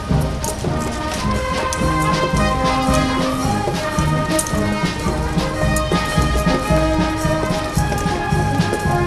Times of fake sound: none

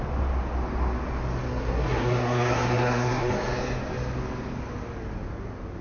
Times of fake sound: 1.5-3.3 (codec, SNAC)

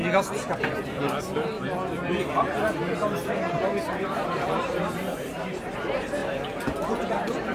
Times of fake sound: 3.9-7.5 (vocoder, BigVGAN v2)

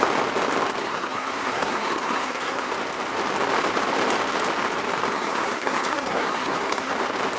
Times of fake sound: 0.8-2.7 (codec, SNAC); 5.1-6.9